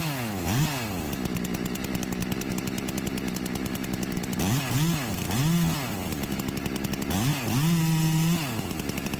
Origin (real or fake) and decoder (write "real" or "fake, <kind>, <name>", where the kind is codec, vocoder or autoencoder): real